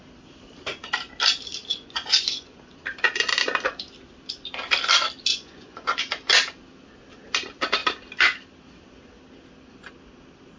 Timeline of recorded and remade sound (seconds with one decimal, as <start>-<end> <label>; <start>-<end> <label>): 0.0-1.7 recorded; 1.7-2.7 remade; 2.7-5.3 recorded; 5.3-6.0 remade; 6.0-10.6 recorded